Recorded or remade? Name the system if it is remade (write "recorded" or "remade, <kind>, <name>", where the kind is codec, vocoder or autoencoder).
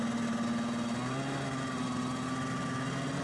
recorded